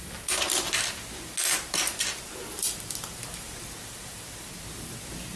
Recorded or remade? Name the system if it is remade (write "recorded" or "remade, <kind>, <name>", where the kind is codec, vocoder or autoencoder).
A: recorded